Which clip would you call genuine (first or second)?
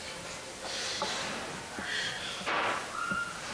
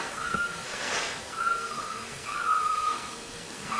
first